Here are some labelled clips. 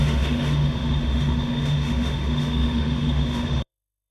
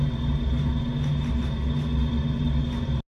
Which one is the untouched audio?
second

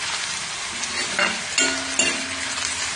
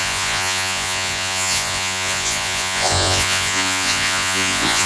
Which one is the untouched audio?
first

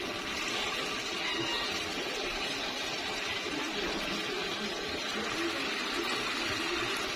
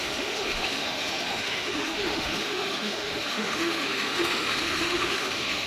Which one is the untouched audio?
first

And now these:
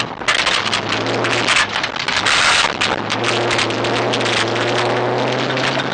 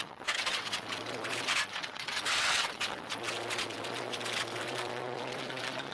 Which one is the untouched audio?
first